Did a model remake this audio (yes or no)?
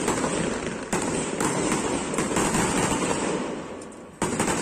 no